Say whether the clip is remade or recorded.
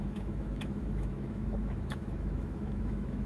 remade